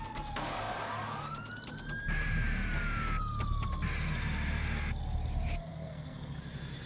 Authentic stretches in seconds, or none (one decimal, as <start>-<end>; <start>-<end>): 0.0-5.7; 6.4-6.9